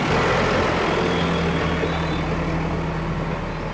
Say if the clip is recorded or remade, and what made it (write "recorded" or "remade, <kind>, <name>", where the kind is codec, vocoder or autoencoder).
recorded